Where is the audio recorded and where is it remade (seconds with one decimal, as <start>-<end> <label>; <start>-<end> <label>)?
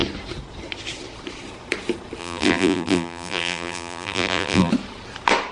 0.0-2.2 recorded; 2.2-4.7 remade; 4.7-5.5 recorded